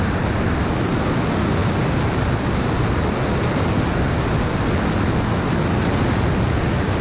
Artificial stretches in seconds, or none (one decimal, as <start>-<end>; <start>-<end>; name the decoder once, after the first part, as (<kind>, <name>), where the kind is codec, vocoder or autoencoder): none